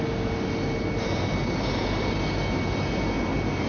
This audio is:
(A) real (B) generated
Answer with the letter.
A